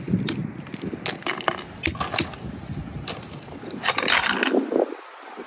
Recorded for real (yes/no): yes